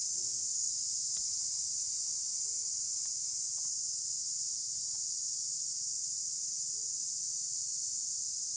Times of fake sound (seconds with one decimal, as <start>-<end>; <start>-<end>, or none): 0.0-0.7